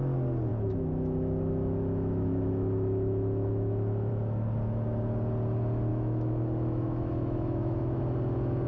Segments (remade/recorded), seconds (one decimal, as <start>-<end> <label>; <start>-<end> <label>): 0.0-0.5 recorded; 0.5-4.1 remade; 4.1-5.9 recorded; 5.9-8.0 remade; 8.0-8.7 recorded